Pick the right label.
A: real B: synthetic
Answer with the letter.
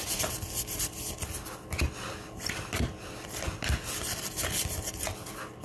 A